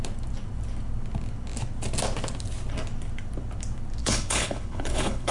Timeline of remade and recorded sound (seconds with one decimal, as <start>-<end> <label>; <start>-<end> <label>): 0.0-4.0 recorded; 4.0-5.3 remade